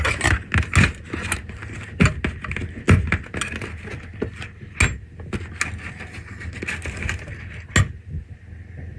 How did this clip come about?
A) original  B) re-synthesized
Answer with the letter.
A